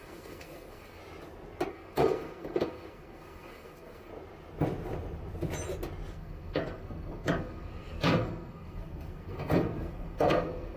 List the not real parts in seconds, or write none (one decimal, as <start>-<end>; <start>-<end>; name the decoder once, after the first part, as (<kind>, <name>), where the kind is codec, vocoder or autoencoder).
0.0-1.0 (codec, SNAC); 1.7-4.1; 6.1-10.8